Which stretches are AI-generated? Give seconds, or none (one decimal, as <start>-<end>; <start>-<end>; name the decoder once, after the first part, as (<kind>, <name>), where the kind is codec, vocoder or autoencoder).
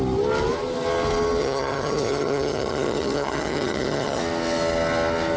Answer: 1.4-4.2 (vocoder, HiFi-GAN)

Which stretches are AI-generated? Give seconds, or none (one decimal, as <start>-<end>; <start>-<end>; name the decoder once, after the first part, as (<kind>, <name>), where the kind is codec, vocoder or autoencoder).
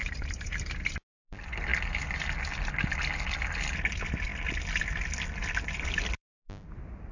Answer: 0.0-0.6 (vocoder, BigVGAN v2)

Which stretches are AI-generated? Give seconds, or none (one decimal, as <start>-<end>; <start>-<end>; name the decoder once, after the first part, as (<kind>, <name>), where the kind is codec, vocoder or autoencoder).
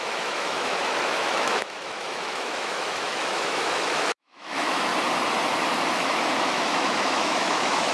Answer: 0.0-4.9 (autoencoder, DAC-VAE); 6.0-7.9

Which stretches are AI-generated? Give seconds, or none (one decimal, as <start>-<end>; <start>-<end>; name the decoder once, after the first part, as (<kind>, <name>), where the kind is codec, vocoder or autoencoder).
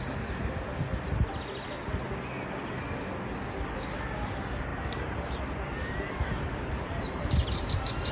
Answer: 4.7-8.1 (vocoder, BigVGAN v2)